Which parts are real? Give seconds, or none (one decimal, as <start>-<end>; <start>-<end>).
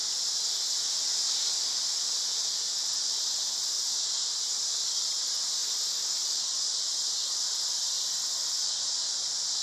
0.0-9.6